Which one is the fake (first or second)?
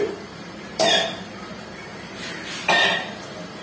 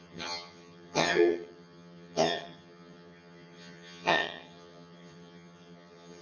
second